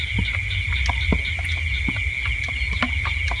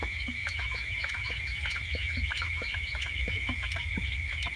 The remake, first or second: second